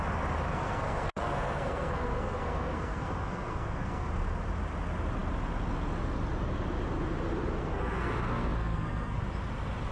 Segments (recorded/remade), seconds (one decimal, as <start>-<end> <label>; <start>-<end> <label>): 0.0-0.5 recorded; 0.5-4.1 remade; 4.1-7.6 recorded; 7.6-9.2 remade; 9.2-9.9 recorded

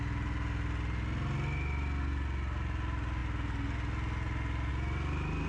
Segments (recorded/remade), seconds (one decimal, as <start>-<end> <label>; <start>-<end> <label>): 0.0-5.5 recorded

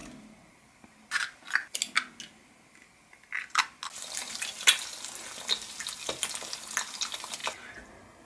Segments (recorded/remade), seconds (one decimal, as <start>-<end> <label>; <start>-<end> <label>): 0.0-8.2 recorded

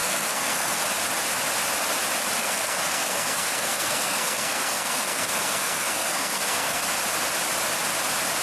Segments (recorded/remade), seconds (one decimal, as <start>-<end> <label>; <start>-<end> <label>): 0.0-0.8 remade; 0.8-2.4 recorded; 2.4-7.0 remade; 7.0-8.4 recorded

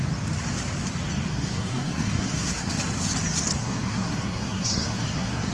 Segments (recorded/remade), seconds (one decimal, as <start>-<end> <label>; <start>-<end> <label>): 0.0-1.3 recorded; 1.3-2.7 remade; 2.7-3.6 recorded; 3.6-5.5 remade

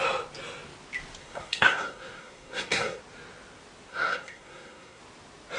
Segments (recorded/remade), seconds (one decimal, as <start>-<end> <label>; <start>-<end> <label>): 0.0-1.2 recorded; 1.2-3.0 remade; 3.0-3.9 recorded; 3.9-5.0 remade; 5.0-5.6 recorded

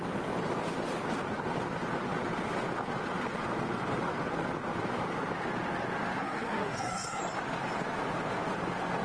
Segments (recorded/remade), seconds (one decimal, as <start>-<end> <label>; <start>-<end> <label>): 0.0-6.2 recorded; 6.2-7.2 remade; 7.2-9.0 recorded